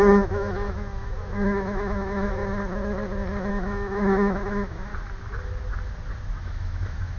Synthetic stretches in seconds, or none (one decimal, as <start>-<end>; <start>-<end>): 0.0-2.4; 3.5-4.9; 6.4-7.2